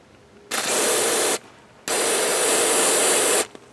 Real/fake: real